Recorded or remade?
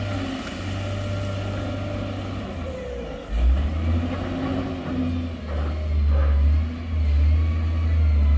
recorded